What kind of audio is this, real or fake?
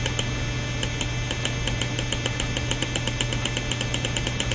real